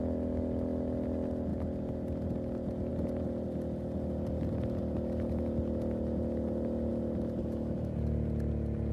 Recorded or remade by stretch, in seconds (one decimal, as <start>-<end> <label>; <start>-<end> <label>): 0.0-8.9 recorded